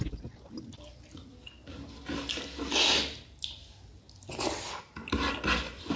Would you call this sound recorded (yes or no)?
yes